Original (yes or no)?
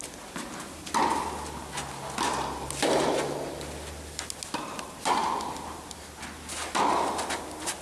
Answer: yes